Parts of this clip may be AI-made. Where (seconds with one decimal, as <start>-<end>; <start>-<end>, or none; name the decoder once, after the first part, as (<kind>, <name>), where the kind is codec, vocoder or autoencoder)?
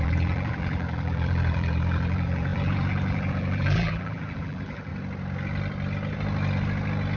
0.0-4.9 (vocoder, BigVGAN v2)